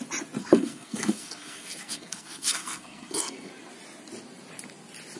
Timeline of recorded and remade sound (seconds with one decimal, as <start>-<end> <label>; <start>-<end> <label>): 0.0-0.4 recorded; 0.4-3.5 remade; 3.5-5.2 recorded